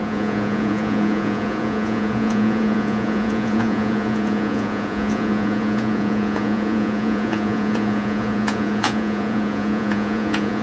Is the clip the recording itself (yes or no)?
no